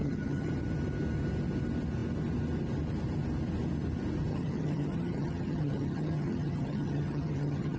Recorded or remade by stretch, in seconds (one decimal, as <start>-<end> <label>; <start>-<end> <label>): 0.0-0.5 remade; 0.5-4.3 recorded; 4.3-7.8 remade